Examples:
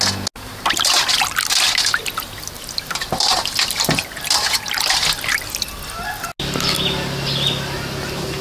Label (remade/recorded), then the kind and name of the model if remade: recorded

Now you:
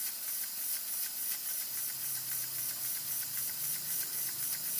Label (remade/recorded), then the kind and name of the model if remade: recorded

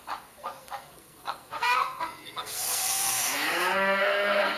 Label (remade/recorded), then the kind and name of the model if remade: remade, codec, SNAC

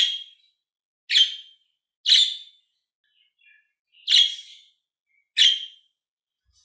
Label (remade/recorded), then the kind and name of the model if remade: recorded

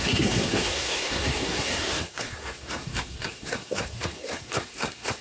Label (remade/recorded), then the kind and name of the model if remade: remade, codec, SNAC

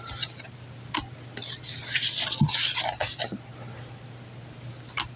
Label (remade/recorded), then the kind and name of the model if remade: recorded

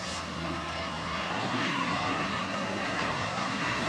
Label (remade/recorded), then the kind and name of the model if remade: remade, codec, SNAC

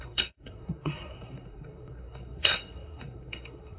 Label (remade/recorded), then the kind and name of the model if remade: remade, codec, SNAC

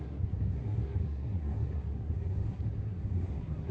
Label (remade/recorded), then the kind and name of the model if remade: remade, codec, SNAC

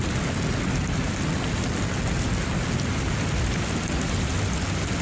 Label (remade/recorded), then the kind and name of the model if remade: recorded